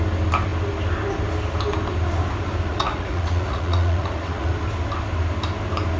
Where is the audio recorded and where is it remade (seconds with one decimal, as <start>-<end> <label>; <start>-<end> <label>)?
0.0-2.7 recorded; 2.7-4.5 remade; 4.5-6.0 recorded